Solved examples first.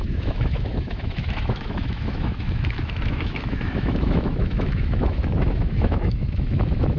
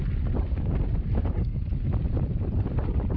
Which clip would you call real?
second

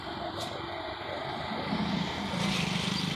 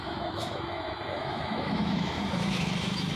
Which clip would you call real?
first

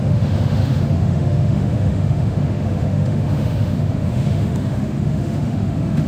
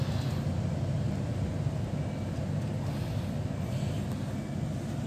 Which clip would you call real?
second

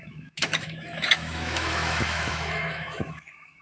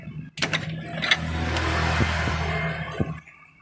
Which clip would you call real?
second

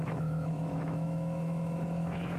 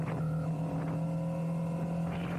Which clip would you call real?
second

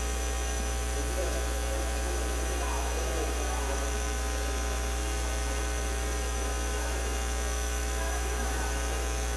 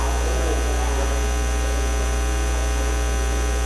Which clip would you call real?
second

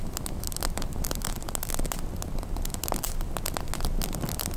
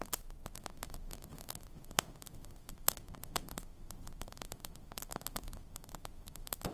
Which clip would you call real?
first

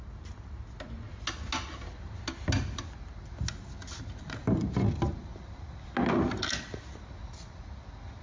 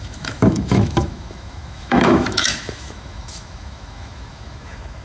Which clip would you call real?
first